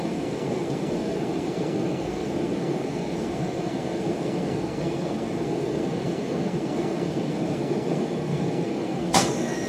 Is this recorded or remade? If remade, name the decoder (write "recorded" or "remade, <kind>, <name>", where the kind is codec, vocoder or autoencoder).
remade, codec, SNAC